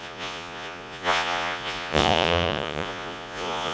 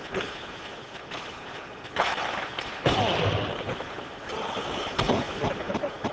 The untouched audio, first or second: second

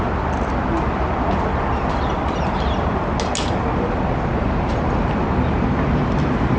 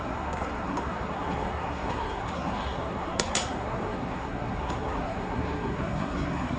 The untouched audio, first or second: first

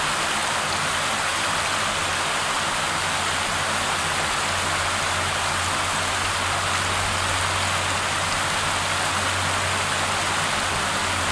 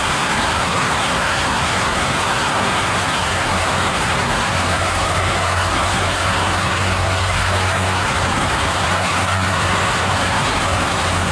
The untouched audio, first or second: first